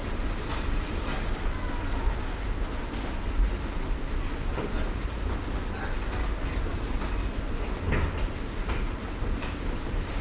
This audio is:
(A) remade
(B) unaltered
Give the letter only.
B